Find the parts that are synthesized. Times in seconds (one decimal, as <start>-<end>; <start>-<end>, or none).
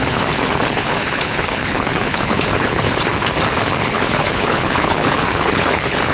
0.0-3.1; 3.8-6.1